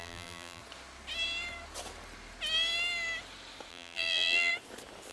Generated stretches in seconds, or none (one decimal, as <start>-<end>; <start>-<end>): 0.0-0.6; 3.7-4.5